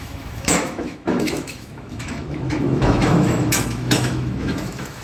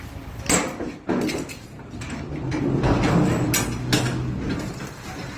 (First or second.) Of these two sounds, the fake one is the first